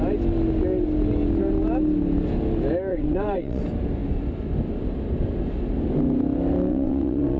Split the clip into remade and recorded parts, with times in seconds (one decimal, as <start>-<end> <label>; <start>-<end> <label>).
0.0-2.9 recorded; 2.9-3.6 remade; 3.6-6.7 recorded; 6.7-7.4 remade

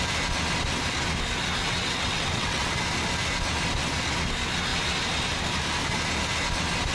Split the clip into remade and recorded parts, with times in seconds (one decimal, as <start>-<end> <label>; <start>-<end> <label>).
0.0-1.6 recorded; 1.6-2.7 remade; 2.7-6.9 recorded

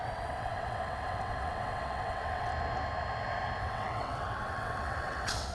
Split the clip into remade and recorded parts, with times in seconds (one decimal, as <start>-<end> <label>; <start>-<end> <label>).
0.0-2.5 remade; 2.5-3.6 recorded; 3.6-5.5 remade

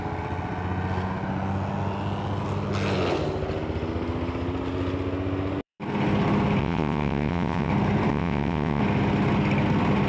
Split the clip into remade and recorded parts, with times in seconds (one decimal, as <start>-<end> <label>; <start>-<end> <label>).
0.0-6.6 recorded; 6.6-7.7 remade; 7.7-8.1 recorded; 8.1-8.8 remade; 8.8-10.1 recorded

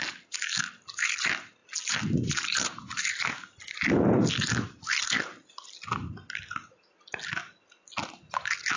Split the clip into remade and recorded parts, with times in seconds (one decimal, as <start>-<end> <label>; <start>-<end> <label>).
0.0-8.8 recorded

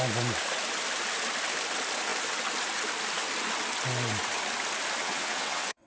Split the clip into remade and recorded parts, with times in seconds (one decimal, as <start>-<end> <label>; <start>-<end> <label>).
0.0-5.0 recorded; 5.0-5.9 remade

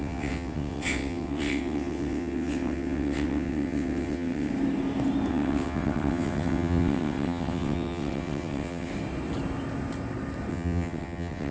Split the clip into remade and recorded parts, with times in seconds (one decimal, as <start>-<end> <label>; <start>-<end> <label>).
0.0-4.5 remade; 4.5-5.3 recorded; 5.3-8.9 remade; 8.9-10.5 recorded; 10.5-11.5 remade

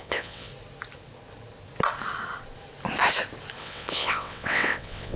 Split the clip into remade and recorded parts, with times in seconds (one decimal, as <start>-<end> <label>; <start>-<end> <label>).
0.0-0.5 remade; 0.5-3.6 recorded; 3.6-5.2 remade